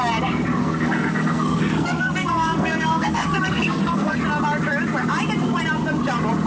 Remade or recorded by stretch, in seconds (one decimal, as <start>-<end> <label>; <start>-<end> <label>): 0.0-0.6 recorded; 0.6-4.2 remade; 4.2-6.5 recorded